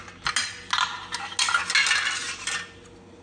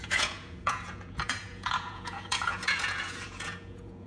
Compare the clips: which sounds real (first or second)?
first